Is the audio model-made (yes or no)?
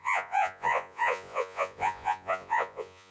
yes